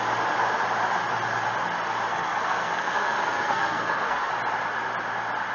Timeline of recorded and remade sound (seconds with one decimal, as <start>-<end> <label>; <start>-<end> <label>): 0.0-2.1 recorded; 2.1-4.3 remade; 4.3-5.5 recorded